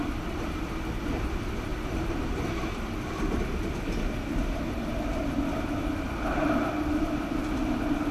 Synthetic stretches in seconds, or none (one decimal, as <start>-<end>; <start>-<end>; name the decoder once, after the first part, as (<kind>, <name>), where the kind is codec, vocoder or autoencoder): 1.7-2.3 (vocoder, BigVGAN v2); 5.8-6.6